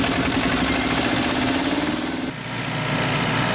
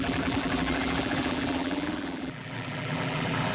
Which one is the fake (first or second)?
second